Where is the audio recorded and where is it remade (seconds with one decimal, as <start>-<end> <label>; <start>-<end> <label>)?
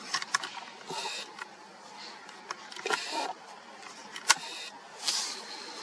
0.0-5.8 recorded